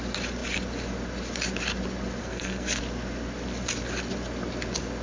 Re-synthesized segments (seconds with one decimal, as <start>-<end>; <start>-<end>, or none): 2.2-2.8